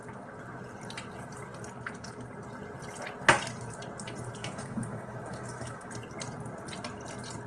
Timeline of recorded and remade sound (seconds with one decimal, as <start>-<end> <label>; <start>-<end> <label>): 0.0-4.4 recorded; 4.4-5.9 remade; 5.9-7.5 recorded